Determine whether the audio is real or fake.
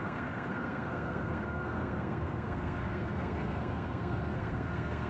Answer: fake